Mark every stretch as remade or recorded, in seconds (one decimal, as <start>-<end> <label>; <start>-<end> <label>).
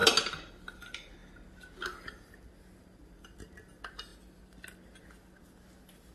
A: 0.0-6.1 recorded